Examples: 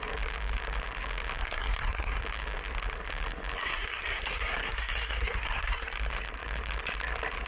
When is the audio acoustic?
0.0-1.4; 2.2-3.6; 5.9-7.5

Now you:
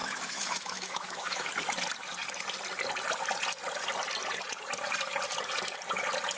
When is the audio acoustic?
1.5-6.4

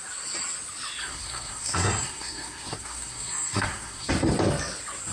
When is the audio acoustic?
0.0-1.0; 4.1-5.1

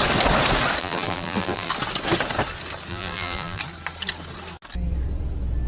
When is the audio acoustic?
0.0-0.8; 1.7-2.9; 3.6-5.7

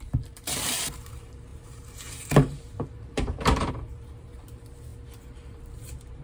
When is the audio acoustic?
none

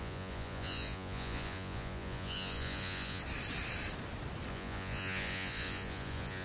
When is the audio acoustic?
3.2-4.5

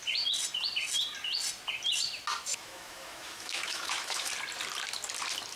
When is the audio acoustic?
0.0-2.5; 4.3-5.6

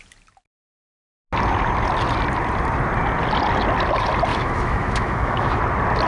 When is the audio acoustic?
0.0-4.3; 5.6-6.1